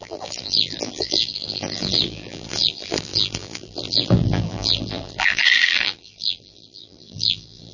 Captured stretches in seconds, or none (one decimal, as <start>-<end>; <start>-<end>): none